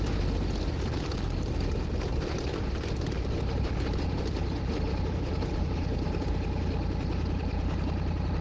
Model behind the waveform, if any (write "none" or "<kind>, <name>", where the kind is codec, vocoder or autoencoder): none